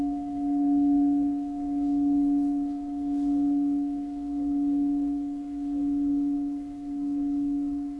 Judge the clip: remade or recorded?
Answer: remade